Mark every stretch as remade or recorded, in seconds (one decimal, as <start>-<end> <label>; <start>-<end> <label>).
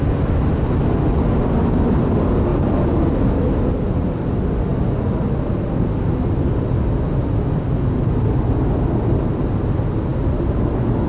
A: 0.0-11.1 recorded